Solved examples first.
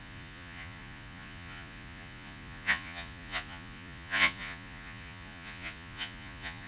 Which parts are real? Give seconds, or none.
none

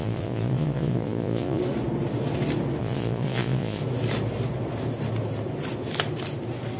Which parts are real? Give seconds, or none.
1.6-2.8; 3.8-6.8